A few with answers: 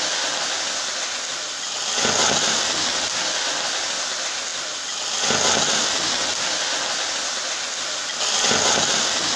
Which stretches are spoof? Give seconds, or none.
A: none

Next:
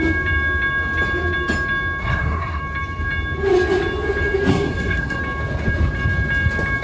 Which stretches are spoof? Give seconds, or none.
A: 2.0-2.6 (codec, SNAC); 4.5-5.2

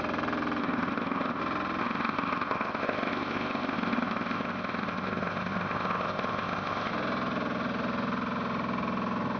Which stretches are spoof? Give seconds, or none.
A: 0.6-1.4 (codec, ZipCodec); 1.8-6.9

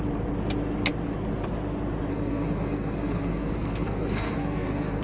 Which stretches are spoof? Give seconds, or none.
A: 2.1-5.0 (codec, SNAC)

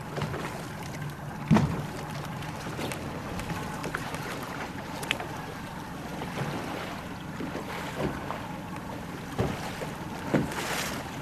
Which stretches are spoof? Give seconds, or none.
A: 3.8-5.6 (vocoder, BigVGAN v2)